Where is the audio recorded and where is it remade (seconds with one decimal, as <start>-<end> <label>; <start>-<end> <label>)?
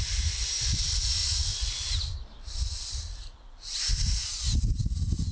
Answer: 0.0-1.2 remade; 1.2-3.5 recorded; 3.5-3.9 remade; 3.9-4.6 recorded; 4.6-5.3 remade